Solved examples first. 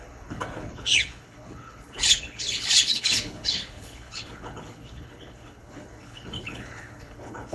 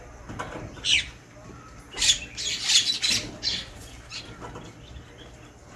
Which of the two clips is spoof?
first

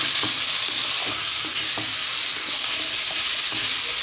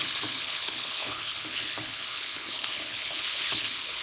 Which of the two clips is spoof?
second